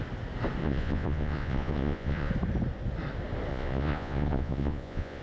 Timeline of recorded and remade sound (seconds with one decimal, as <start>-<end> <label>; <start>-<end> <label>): 0.0-0.6 recorded; 0.6-2.3 remade; 2.3-3.5 recorded; 3.5-5.2 remade